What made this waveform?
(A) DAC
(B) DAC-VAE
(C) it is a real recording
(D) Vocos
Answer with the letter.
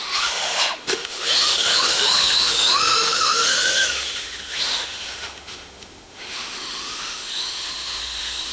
B